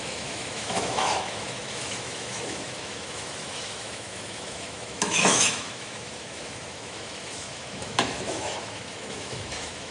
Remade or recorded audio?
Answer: remade